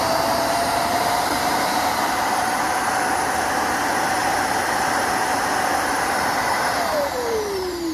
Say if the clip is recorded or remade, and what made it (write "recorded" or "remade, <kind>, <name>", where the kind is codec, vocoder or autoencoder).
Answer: remade, vocoder, BigVGAN v2